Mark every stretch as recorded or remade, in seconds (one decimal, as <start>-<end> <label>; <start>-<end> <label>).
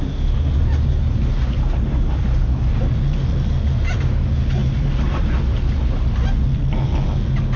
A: 0.0-7.6 recorded